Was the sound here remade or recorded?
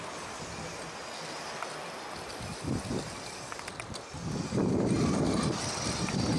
recorded